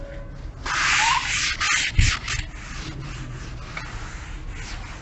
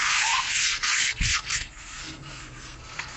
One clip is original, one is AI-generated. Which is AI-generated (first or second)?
second